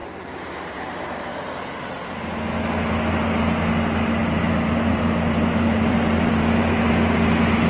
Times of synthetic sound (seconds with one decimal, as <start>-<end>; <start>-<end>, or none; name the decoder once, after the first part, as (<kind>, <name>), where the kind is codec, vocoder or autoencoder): 4.2-6.9 (vocoder, BigVGAN v2)